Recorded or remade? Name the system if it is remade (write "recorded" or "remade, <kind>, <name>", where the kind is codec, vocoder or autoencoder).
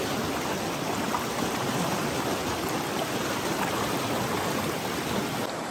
recorded